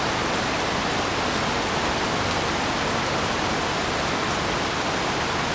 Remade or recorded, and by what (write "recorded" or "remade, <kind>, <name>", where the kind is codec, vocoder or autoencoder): recorded